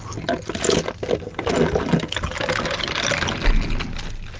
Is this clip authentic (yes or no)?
yes